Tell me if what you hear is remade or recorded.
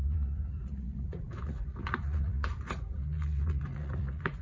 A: remade